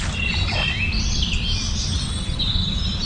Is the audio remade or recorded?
recorded